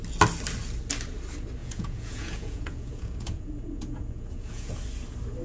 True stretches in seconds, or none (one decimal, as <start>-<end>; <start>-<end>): 0.0-1.6; 4.8-5.4